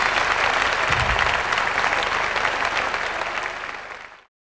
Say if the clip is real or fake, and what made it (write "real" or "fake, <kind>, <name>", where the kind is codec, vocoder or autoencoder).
real